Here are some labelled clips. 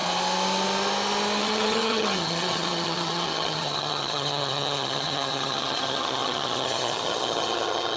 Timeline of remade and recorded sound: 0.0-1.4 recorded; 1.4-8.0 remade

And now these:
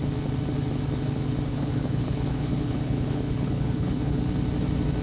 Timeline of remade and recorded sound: 0.0-1.5 recorded; 1.5-4.2 remade; 4.2-5.0 recorded

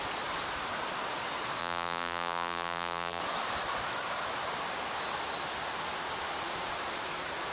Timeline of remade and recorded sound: 0.0-1.6 recorded; 1.6-3.2 remade; 3.2-7.5 recorded

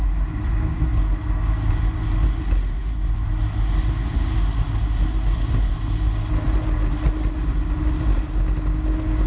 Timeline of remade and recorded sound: 0.0-9.3 recorded

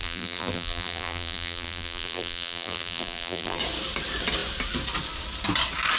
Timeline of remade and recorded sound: 0.0-3.6 remade; 3.6-6.0 recorded